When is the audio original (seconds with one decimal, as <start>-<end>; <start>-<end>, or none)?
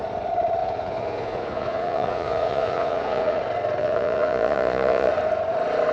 0.0-0.6; 3.4-3.8; 5.1-5.9